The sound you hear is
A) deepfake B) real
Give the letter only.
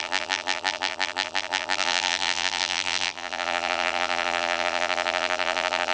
A